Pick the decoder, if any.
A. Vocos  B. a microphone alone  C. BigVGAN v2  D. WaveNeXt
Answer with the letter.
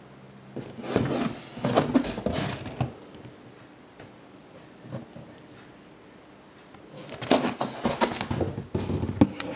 B